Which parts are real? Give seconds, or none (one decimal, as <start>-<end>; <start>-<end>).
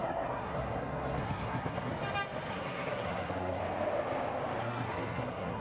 1.9-2.5; 3.6-4.6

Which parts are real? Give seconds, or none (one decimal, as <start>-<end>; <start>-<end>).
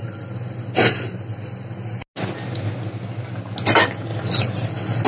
0.0-5.1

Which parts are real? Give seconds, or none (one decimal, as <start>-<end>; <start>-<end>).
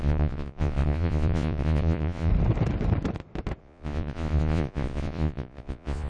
2.3-3.6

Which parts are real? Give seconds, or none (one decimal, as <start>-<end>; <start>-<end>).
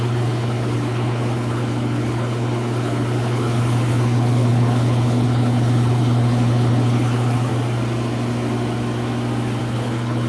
7.5-9.6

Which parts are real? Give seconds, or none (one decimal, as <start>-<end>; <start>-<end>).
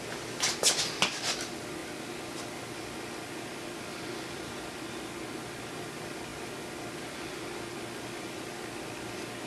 0.0-9.5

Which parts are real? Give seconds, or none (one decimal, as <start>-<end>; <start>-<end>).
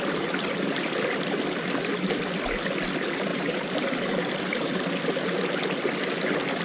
0.0-3.3; 4.3-6.6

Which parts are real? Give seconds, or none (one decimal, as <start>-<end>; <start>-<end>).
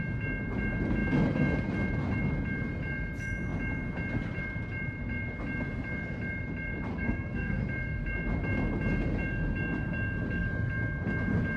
0.0-6.9; 7.6-11.6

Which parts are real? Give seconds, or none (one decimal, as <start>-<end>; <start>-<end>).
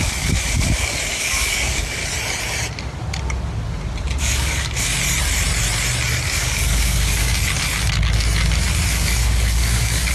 2.0-4.2; 4.9-6.2; 7.3-8.9